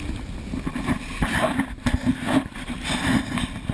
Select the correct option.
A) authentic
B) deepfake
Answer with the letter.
A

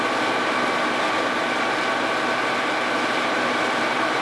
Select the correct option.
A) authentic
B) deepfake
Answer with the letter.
A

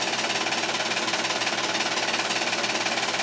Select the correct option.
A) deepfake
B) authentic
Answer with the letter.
B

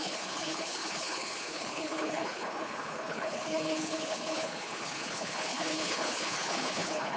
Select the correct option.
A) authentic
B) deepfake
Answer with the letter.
B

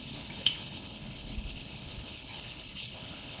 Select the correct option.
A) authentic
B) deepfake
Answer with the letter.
B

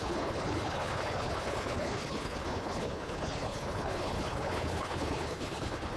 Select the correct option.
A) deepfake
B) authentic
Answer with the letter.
A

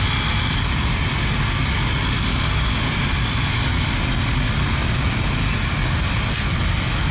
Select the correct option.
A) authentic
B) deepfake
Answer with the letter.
A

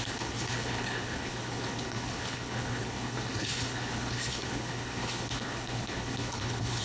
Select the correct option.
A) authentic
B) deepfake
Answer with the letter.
B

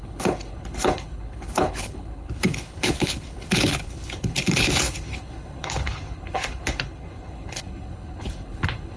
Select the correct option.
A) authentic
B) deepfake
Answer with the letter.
B